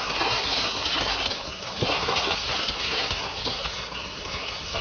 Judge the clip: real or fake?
fake